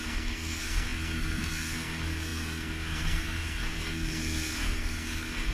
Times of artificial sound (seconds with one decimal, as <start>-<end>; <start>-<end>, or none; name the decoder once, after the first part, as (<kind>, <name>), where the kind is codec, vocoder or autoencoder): 0.0-5.5 (codec, SNAC)